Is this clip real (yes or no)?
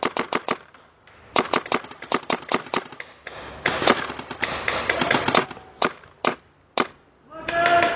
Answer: yes